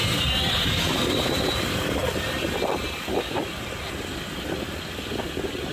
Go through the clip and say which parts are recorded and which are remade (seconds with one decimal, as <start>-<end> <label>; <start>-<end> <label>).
0.0-0.5 recorded; 0.5-2.0 remade; 2.0-5.7 recorded